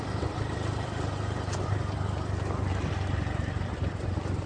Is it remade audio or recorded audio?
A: recorded